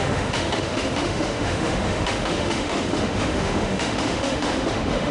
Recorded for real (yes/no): no